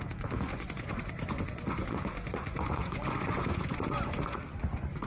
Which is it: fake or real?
fake